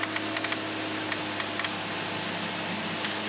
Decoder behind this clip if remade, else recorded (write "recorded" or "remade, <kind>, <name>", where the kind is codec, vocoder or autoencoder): recorded